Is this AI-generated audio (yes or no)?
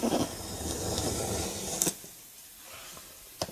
no